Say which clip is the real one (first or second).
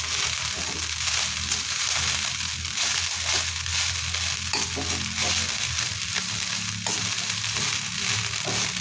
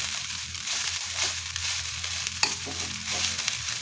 first